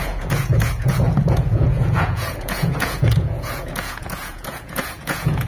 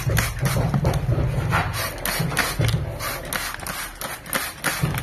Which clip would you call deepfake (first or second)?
first